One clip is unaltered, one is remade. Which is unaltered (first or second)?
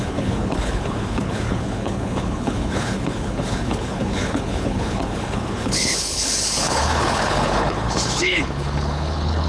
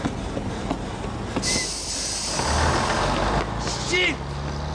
second